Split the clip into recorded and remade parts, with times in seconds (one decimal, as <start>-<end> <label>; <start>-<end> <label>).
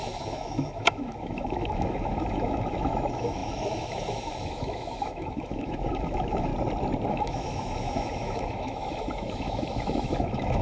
0.0-6.5 remade; 6.5-7.1 recorded; 7.1-10.6 remade